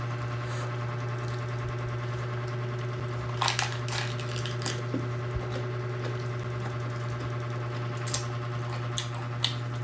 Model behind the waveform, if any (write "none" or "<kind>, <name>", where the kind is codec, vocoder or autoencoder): none